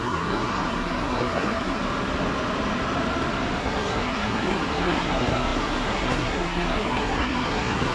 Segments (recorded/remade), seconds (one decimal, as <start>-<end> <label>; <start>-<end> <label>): 0.0-1.8 remade; 1.8-3.6 recorded; 3.6-7.9 remade